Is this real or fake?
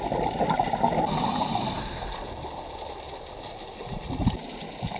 real